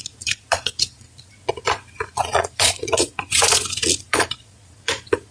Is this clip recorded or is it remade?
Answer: remade